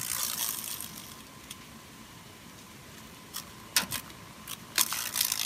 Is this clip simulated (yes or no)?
no